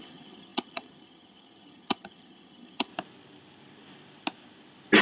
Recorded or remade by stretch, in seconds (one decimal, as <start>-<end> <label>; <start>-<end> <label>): 0.0-2.9 remade; 2.9-5.0 recorded